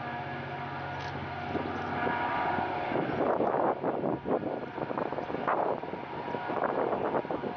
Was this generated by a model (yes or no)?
no